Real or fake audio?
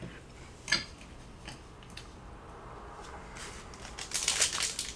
real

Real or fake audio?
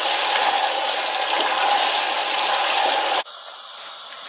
real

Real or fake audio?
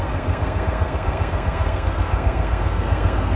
fake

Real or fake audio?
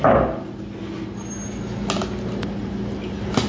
real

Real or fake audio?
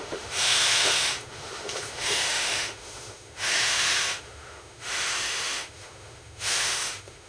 fake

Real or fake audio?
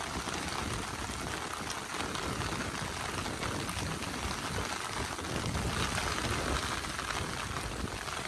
real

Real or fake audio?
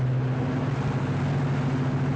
real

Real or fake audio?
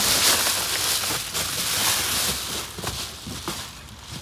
real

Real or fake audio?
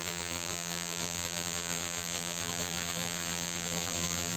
fake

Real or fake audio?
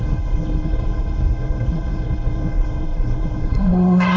fake